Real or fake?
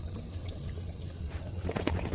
fake